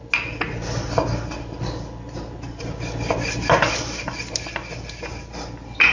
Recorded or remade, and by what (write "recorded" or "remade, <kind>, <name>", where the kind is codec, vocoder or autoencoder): recorded